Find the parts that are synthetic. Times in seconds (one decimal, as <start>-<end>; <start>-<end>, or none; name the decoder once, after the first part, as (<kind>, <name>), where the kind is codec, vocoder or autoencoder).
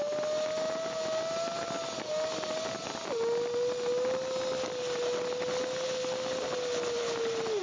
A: none